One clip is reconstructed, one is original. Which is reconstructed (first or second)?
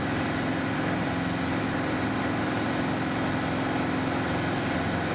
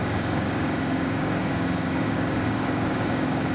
second